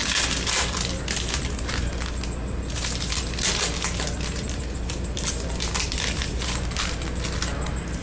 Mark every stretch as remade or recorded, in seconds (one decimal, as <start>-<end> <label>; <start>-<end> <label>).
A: 0.0-8.0 recorded